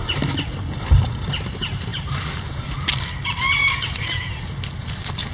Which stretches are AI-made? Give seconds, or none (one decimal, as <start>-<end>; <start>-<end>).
none